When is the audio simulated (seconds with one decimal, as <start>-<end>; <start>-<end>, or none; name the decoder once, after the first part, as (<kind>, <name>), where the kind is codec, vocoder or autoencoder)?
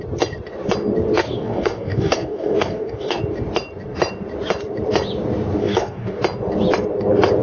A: 1.2-3.2 (codec, DAC); 5.6-6.2